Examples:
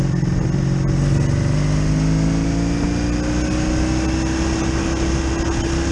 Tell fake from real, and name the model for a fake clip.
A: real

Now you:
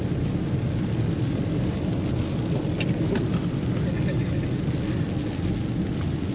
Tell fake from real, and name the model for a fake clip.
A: real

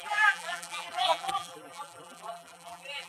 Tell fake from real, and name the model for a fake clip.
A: fake, vocoder, BigVGAN v2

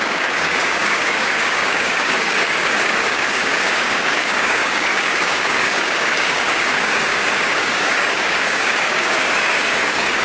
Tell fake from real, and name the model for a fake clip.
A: fake, codec, DAC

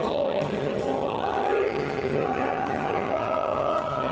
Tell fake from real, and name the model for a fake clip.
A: fake, vocoder, HiFi-GAN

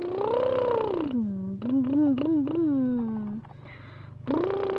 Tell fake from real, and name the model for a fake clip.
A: real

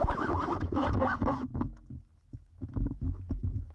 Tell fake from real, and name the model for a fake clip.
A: fake, autoencoder, DAC-VAE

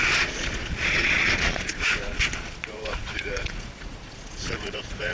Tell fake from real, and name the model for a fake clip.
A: fake, vocoder, Vocos